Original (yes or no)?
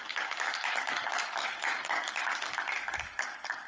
no